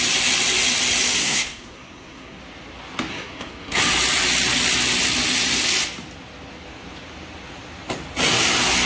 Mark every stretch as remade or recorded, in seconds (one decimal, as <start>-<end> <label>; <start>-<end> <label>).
0.0-1.2 recorded; 1.2-2.4 remade; 2.4-3.1 recorded; 3.1-3.8 remade; 3.8-8.9 recorded